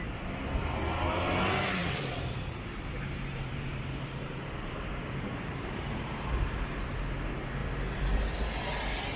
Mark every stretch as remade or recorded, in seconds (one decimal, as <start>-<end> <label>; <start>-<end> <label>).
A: 0.0-1.8 recorded; 1.8-7.0 remade; 7.0-9.2 recorded